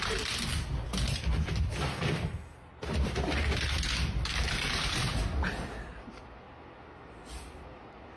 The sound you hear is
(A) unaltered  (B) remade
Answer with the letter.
A